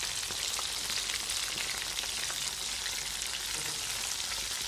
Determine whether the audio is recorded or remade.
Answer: recorded